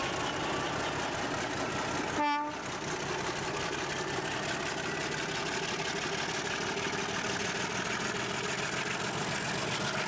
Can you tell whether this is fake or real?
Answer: real